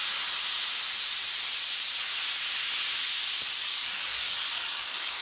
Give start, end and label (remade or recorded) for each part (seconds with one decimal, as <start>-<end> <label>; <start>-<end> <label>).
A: 0.0-3.6 recorded; 3.6-5.2 remade